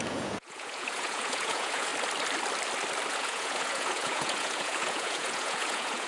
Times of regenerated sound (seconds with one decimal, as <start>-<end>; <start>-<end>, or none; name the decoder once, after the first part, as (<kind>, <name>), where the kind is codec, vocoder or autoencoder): 0.0-1.9 (vocoder, Vocos); 3.1-6.1